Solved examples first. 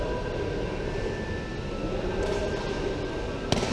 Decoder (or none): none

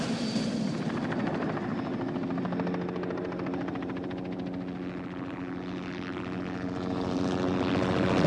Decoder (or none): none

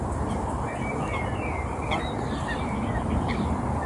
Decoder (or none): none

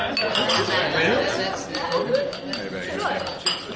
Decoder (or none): none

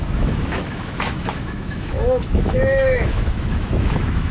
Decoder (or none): autoencoder, DAC-VAE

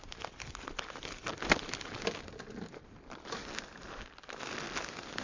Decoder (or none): none